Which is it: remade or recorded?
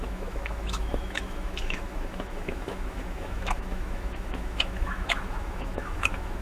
remade